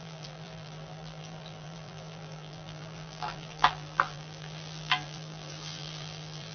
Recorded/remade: remade